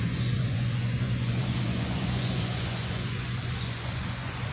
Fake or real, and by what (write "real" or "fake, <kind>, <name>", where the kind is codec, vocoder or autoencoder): fake, vocoder, Vocos